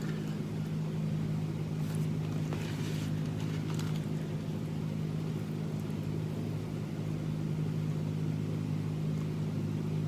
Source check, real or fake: real